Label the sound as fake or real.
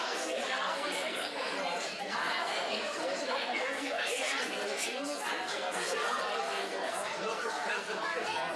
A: fake